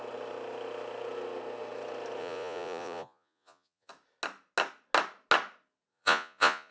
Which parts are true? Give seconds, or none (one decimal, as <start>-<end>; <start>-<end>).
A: 0.0-2.2; 3.9-5.9